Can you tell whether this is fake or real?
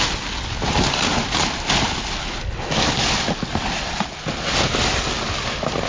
real